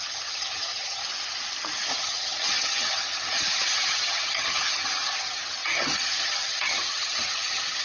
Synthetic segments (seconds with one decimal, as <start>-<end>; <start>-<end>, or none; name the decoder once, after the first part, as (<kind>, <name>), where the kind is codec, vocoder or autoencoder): 0.0-1.0 (vocoder, HiFi-GAN); 1.9-7.8